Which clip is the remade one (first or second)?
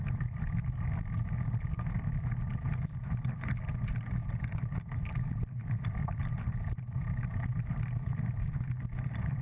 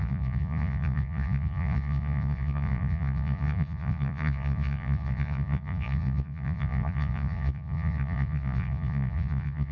second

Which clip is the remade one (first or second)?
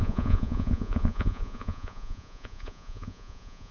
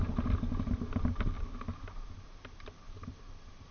first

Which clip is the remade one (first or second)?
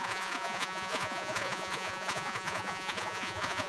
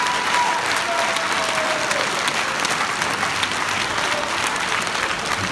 first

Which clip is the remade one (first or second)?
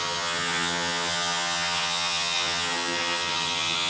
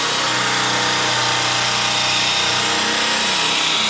first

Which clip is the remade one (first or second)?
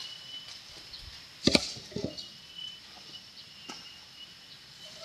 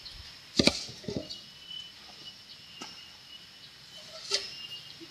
first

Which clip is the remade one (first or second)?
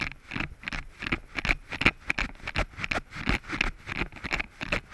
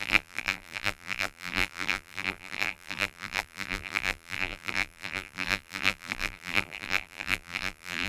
second